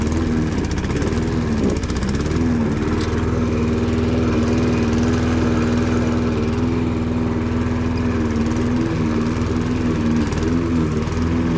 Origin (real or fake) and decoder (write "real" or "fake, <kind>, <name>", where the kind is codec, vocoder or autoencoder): real